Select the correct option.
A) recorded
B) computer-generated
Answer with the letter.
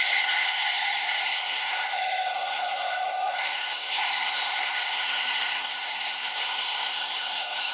B